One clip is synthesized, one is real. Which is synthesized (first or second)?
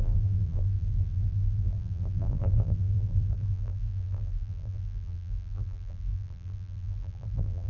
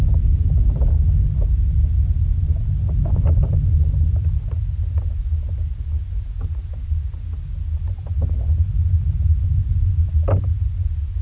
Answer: first